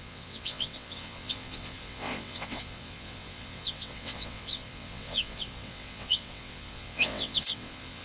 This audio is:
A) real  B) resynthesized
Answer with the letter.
B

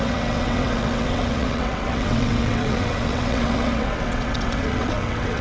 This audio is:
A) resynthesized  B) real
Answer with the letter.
A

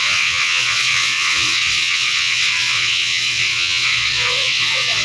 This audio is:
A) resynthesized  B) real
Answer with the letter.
A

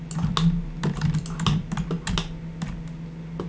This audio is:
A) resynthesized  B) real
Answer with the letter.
B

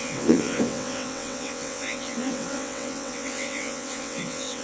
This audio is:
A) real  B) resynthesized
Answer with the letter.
B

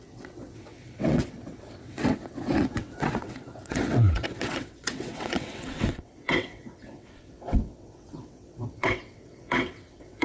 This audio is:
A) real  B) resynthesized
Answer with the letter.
B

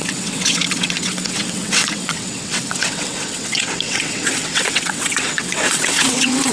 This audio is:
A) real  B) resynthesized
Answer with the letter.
B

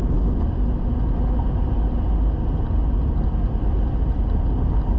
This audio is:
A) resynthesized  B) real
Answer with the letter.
B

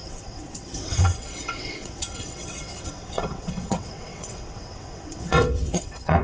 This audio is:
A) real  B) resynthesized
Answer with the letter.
B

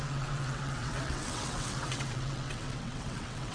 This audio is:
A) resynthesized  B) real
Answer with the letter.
A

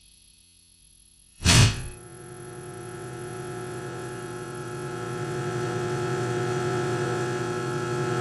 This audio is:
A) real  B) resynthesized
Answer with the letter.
B